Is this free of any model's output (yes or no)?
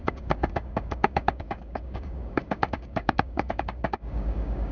no